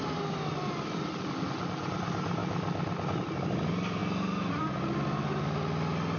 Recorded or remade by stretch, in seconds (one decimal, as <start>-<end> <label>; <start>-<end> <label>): 0.0-6.2 recorded